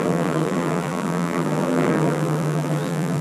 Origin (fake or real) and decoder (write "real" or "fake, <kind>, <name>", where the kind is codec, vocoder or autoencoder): fake, vocoder, BigVGAN v2